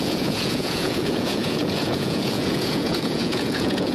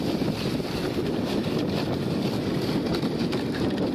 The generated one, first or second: first